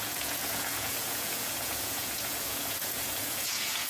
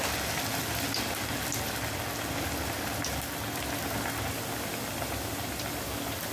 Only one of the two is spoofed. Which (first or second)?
first